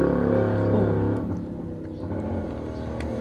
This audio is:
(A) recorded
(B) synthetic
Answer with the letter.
A